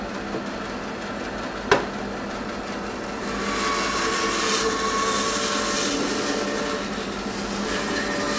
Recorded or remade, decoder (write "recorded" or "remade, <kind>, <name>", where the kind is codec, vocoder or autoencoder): recorded